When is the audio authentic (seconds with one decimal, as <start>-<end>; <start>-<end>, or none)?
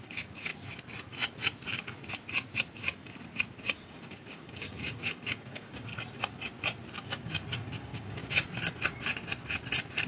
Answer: 0.5-3.9; 5.9-7.0; 8.2-10.1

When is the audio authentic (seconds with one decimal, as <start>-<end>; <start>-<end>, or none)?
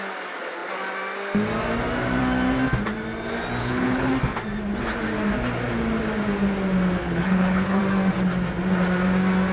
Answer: 0.0-3.6; 4.1-7.0; 7.8-9.5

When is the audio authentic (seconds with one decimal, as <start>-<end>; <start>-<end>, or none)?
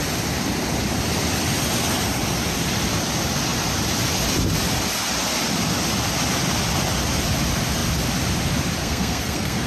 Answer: 0.0-8.8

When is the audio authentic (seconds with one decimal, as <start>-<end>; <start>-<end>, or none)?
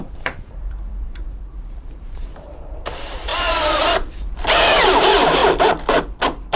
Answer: 5.4-6.6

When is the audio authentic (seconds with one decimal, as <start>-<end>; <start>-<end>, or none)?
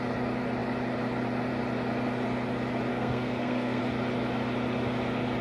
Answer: 0.0-2.9; 3.8-5.4